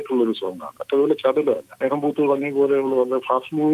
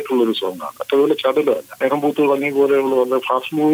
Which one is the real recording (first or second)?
second